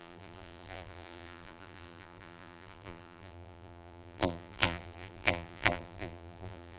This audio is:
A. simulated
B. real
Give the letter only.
A